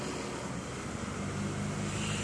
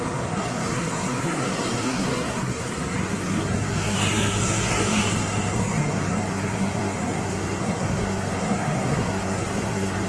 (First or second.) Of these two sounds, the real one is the first